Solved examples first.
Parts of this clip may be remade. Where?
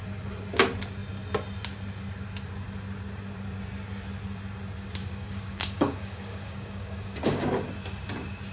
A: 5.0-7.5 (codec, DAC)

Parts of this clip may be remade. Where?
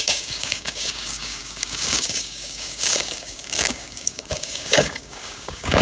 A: 0.0-5.8 (codec, DAC)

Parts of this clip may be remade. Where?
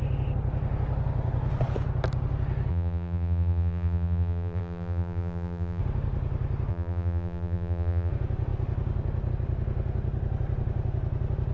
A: 2.7-5.8 (vocoder, BigVGAN v2); 6.7-8.1